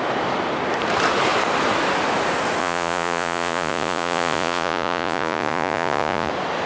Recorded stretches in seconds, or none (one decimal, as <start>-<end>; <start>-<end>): 0.0-2.6; 6.3-6.7